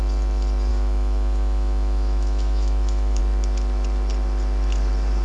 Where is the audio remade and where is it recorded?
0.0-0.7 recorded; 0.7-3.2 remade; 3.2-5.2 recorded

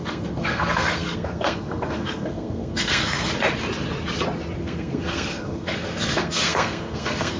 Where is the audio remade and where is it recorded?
0.0-3.3 remade; 3.3-4.6 recorded; 4.6-7.4 remade

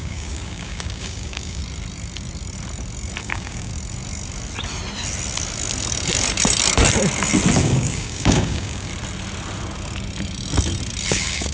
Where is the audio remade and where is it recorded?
0.0-1.6 remade; 1.6-3.2 recorded; 3.2-3.7 remade; 3.7-7.6 recorded; 7.6-8.9 remade; 8.9-11.1 recorded; 11.1-11.5 remade

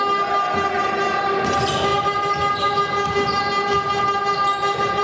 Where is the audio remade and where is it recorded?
0.0-5.0 recorded